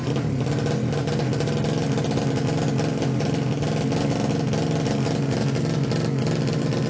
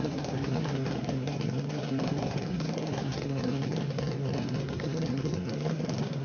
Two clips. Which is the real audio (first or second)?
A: first